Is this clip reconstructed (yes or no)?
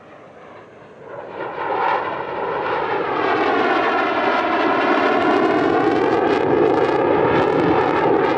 no